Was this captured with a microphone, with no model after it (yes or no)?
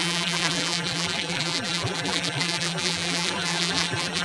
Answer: no